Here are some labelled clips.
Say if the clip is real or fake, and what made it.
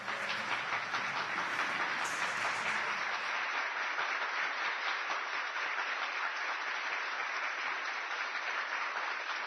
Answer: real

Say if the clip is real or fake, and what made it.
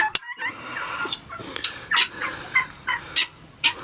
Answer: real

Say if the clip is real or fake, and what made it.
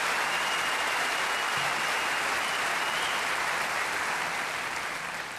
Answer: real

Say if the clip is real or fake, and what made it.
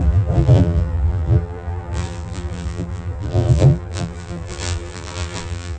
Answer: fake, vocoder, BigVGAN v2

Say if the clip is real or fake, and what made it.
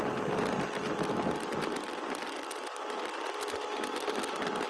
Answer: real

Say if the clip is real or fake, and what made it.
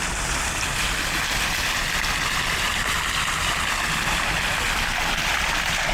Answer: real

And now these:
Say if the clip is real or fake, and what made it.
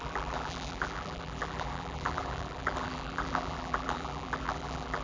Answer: fake, vocoder, BigVGAN v2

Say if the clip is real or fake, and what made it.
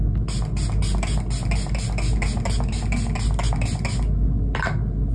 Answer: real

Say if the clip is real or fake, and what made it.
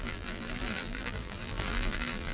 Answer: fake, vocoder, BigVGAN v2